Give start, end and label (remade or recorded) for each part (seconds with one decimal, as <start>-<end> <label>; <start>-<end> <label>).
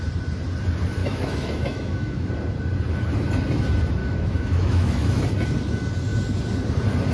0.0-1.0 recorded; 1.0-2.3 remade; 2.3-4.0 recorded; 4.0-5.2 remade; 5.2-7.1 recorded